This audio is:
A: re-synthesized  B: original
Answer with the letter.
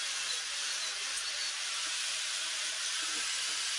B